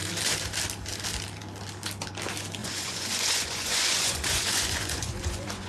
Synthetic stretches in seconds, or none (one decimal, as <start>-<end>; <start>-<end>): 2.6-5.7